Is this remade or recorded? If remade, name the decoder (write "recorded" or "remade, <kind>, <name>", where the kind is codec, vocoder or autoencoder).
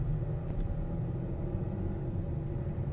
recorded